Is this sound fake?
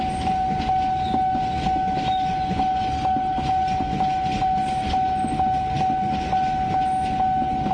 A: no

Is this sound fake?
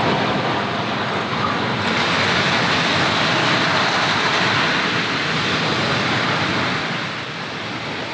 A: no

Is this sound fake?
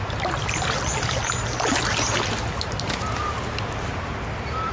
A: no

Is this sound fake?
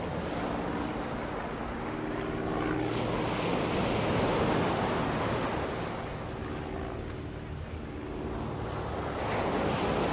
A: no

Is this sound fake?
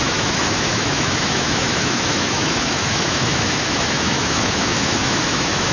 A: yes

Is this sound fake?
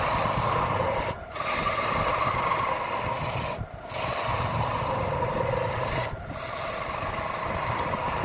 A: no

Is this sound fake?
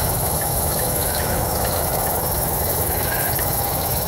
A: yes